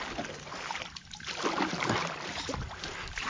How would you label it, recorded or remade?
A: recorded